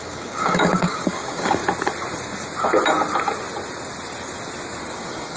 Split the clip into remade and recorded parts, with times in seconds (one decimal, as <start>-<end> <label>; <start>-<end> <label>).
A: 0.0-1.6 remade; 1.6-4.8 recorded; 4.8-5.4 remade

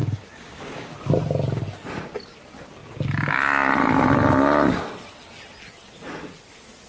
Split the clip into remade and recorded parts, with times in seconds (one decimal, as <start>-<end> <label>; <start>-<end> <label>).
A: 0.0-0.9 remade; 0.9-6.9 recorded

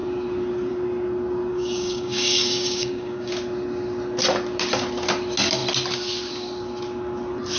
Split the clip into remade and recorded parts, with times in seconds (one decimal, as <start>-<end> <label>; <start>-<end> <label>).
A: 0.0-1.5 recorded; 1.5-3.3 remade; 3.3-7.6 recorded

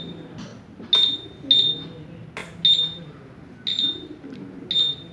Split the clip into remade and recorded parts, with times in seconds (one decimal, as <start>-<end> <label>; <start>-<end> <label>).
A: 0.0-5.1 recorded